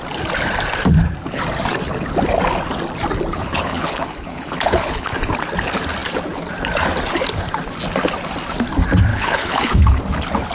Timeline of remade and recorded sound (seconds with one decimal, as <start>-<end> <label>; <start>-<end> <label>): 0.0-3.3 recorded; 3.3-5.3 remade; 5.3-9.1 recorded; 9.1-10.0 remade; 10.0-10.5 recorded